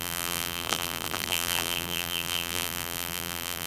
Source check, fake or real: fake